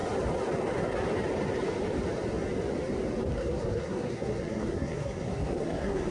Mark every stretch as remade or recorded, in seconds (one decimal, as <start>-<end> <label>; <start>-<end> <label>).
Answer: 0.0-3.3 recorded; 3.3-6.1 remade